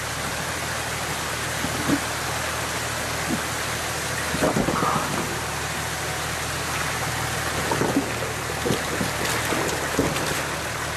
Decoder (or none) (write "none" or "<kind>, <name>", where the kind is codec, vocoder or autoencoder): none